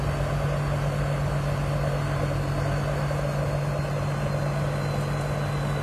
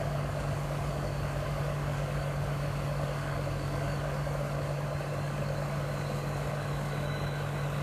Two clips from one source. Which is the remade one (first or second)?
second